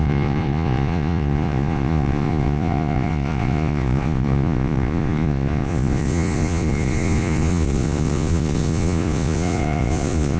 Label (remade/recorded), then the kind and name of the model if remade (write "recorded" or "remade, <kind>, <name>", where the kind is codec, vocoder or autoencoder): remade, vocoder, Vocos